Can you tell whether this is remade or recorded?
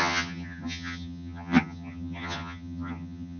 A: remade